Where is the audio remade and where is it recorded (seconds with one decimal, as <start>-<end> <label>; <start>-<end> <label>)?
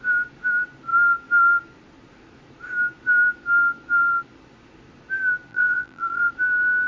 0.0-5.5 recorded; 5.5-6.3 remade; 6.3-6.9 recorded